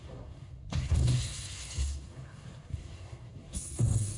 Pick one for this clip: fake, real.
fake